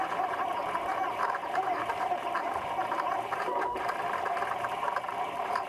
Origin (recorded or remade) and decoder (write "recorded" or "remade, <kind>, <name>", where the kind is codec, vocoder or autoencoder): remade, vocoder, BigVGAN v2